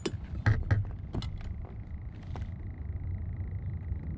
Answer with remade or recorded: recorded